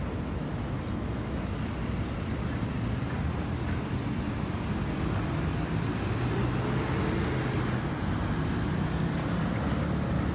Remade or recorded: recorded